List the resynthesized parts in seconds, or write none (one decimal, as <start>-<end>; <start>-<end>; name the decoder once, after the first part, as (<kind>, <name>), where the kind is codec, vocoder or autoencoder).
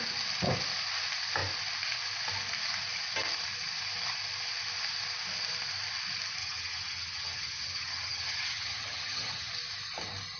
6.4-9.5 (vocoder, HiFi-GAN)